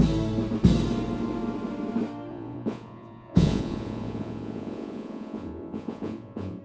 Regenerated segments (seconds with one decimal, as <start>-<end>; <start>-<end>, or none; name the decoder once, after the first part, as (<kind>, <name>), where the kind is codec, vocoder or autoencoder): 2.3-6.6 (vocoder, Vocos)